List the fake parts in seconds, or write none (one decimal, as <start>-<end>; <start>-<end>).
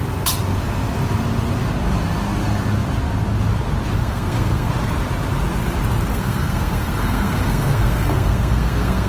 4.0-4.7; 6.1-9.1